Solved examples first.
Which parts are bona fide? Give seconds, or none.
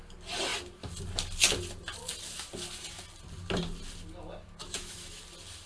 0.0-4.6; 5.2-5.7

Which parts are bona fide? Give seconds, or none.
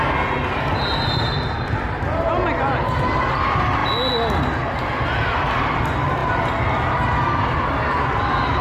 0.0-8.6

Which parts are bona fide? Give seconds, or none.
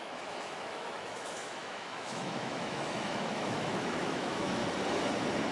4.6-5.5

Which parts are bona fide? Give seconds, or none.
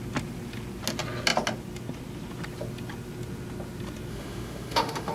0.0-4.1